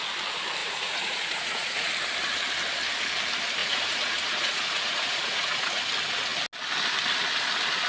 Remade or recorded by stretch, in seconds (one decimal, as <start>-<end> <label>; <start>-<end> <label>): 0.0-0.6 recorded; 0.6-1.9 remade; 1.9-3.6 recorded; 3.6-5.8 remade; 5.8-7.9 recorded